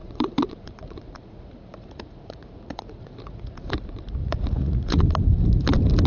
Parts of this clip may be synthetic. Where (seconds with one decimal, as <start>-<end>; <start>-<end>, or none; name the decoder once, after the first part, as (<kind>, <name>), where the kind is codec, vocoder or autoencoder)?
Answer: 0.0-3.7 (vocoder, Vocos); 4.2-5.0